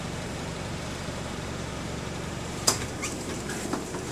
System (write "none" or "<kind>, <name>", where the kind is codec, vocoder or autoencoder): vocoder, BigVGAN v2